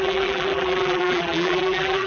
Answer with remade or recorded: remade